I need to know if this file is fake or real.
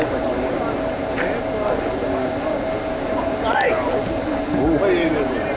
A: real